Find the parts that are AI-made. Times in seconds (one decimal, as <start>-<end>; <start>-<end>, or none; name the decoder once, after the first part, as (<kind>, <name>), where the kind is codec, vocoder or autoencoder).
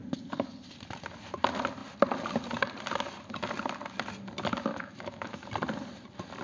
4.7-5.4 (autoencoder, DAC-VAE)